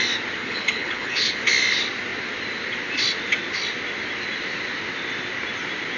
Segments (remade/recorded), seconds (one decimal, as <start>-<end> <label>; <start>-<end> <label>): 0.0-0.4 recorded; 0.4-1.4 remade; 1.4-6.0 recorded